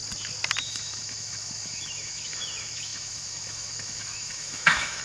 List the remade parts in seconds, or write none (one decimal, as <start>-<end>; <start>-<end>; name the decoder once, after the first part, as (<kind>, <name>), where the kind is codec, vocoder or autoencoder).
0.6-5.0 (autoencoder, DAC-VAE)